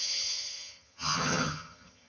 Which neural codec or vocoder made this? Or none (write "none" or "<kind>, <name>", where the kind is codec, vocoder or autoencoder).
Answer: vocoder, HiFi-GAN